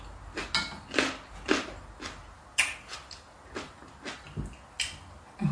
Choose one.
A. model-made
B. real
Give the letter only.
B